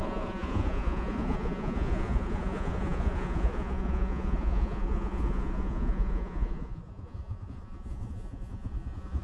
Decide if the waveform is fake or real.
fake